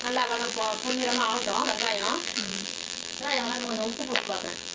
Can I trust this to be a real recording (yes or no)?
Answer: no